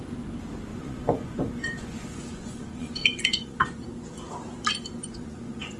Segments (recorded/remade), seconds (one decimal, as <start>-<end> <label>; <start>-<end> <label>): 0.0-0.7 recorded; 0.7-3.8 remade; 3.8-5.0 recorded; 5.0-5.8 remade